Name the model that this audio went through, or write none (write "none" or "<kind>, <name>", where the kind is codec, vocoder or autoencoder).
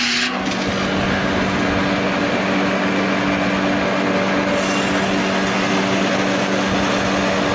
none